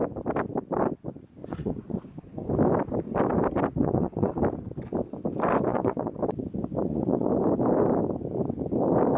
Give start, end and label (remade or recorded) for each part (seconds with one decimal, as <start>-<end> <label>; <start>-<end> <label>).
0.0-1.4 recorded; 1.4-2.5 remade; 2.5-3.8 recorded; 3.8-4.3 remade; 4.3-5.7 recorded; 5.7-6.2 remade; 6.2-6.8 recorded; 6.8-7.3 remade; 7.3-9.2 recorded